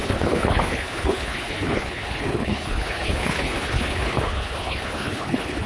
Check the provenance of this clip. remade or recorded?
remade